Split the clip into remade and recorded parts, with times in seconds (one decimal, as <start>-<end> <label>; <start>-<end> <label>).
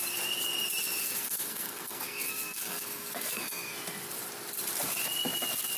0.0-1.0 recorded; 1.0-3.7 remade; 3.7-5.8 recorded